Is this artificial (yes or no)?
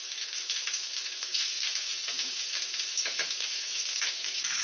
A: yes